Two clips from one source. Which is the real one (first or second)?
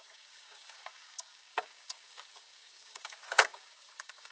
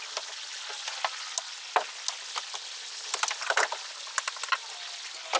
second